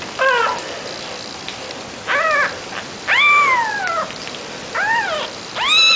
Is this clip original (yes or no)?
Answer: yes